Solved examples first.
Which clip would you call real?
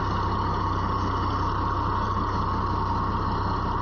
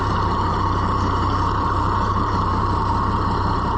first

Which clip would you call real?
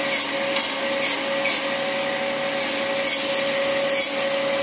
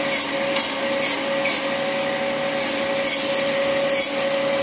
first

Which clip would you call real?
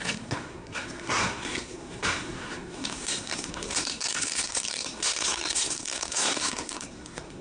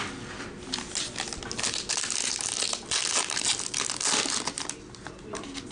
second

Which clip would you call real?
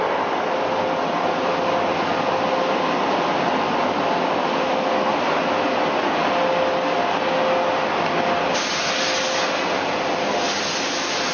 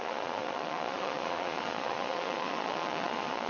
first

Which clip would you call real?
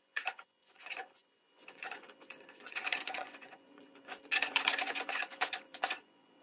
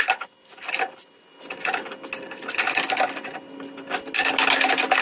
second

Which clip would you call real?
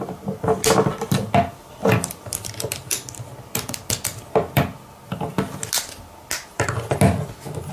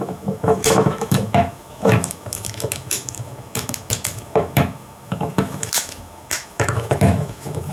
first